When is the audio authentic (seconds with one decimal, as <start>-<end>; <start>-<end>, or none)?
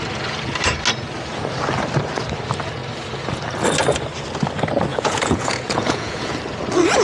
0.0-4.9; 6.4-7.0